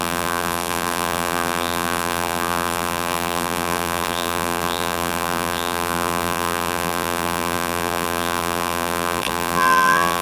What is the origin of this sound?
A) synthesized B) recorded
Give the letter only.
A